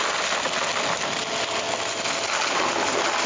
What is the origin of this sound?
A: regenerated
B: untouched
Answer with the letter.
B